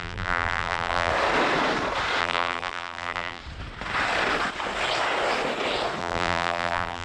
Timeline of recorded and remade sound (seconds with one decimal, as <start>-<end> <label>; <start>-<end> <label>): 0.0-1.1 remade; 1.1-2.2 recorded; 2.2-3.4 remade; 3.4-6.0 recorded; 6.0-7.0 remade